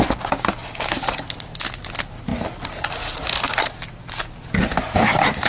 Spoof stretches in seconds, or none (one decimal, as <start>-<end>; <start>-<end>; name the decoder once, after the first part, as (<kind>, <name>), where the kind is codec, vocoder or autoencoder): none